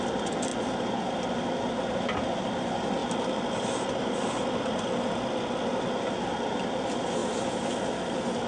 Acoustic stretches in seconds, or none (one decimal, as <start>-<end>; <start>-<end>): 0.5-1.9